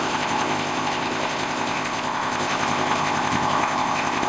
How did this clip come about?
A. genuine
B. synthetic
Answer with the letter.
B